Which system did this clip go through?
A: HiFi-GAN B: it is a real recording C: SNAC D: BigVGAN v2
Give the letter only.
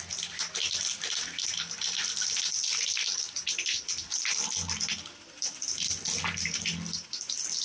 B